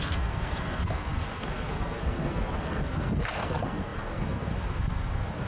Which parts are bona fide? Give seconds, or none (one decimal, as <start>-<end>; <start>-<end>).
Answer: none

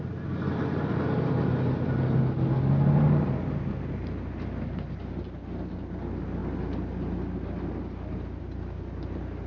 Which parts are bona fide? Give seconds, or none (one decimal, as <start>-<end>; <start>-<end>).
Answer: 0.0-9.5